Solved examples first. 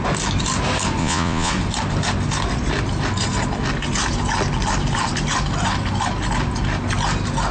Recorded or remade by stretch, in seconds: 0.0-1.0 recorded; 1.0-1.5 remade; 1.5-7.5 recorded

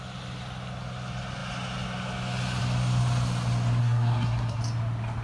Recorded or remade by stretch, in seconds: 0.0-3.8 recorded; 3.8-4.6 remade; 4.6-5.2 recorded

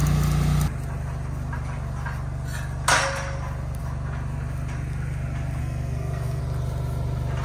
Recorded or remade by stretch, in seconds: 0.0-5.6 recorded; 5.6-6.4 remade; 6.4-7.4 recorded

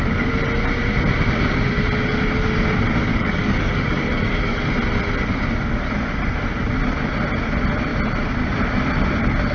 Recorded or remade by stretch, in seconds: 0.0-3.1 recorded; 3.1-4.7 remade; 4.7-9.5 recorded

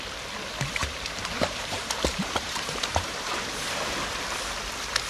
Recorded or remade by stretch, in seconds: 0.0-0.8 recorded; 0.8-3.9 remade; 3.9-5.1 recorded